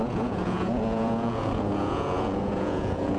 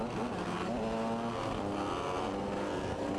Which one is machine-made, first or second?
first